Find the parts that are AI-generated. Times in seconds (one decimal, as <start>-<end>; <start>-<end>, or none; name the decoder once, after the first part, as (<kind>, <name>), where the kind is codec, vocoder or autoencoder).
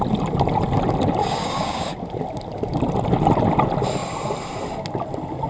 1.2-1.9 (codec, DAC)